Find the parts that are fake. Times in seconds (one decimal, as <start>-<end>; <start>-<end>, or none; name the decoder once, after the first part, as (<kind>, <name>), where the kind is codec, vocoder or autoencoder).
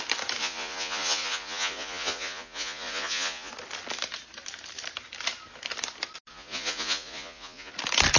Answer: 0.4-3.5 (vocoder, Vocos); 6.3-7.7